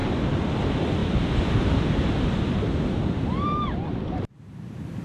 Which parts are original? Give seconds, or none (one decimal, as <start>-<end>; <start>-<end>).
1.0-3.2